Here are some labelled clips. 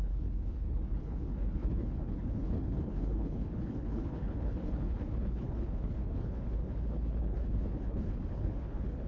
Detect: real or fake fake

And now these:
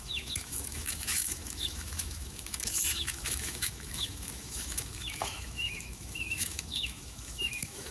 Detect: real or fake fake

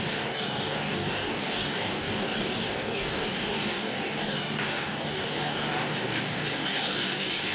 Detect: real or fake fake